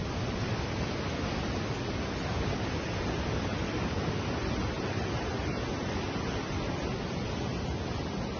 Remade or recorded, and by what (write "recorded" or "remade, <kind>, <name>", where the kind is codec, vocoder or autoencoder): recorded